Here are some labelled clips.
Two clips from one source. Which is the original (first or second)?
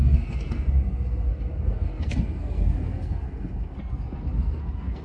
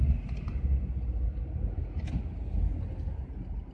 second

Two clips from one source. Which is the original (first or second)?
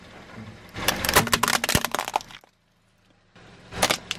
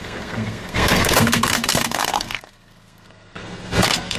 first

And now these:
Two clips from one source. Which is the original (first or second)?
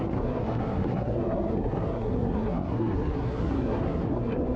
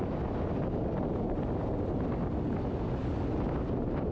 second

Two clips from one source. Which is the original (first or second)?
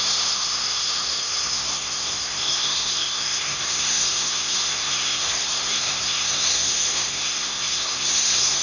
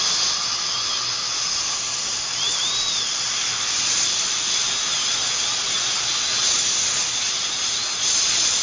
second